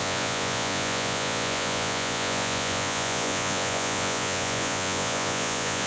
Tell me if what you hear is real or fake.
fake